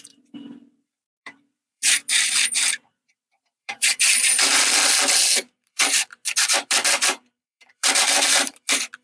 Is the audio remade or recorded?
remade